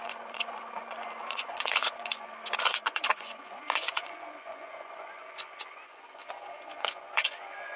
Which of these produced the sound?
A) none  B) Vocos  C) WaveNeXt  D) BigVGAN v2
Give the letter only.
B